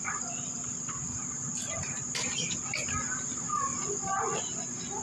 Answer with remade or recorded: recorded